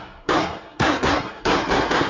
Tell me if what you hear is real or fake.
fake